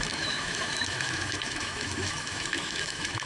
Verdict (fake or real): fake